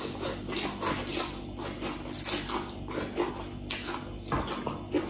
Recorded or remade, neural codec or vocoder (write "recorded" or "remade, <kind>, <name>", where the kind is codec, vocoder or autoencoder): recorded